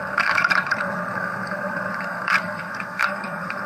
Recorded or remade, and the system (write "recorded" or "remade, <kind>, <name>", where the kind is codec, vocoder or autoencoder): remade, codec, SNAC